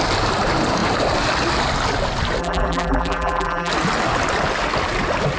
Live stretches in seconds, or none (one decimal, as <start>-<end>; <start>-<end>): 0.0-2.4; 3.7-5.4